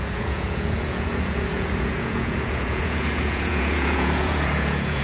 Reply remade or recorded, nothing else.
remade